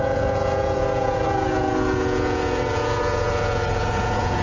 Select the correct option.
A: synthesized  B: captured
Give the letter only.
A